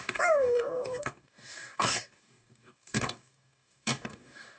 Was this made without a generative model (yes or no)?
no